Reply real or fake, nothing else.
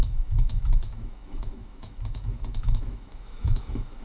fake